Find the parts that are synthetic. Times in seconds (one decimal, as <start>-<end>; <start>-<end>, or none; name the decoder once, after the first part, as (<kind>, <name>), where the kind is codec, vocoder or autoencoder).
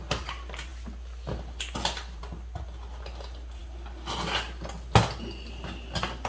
none